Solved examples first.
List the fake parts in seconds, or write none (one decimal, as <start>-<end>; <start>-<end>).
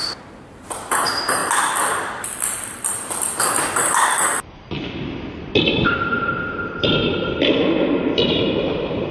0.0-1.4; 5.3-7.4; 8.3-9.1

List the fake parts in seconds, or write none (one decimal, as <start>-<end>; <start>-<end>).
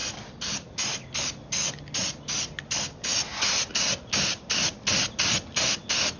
none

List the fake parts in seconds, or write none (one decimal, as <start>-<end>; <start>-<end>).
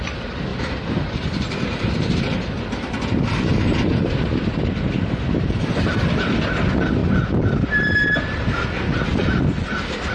0.5-2.2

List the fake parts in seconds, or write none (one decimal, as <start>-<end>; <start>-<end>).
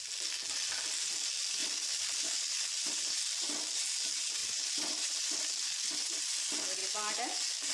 1.6-3.1; 4.4-6.2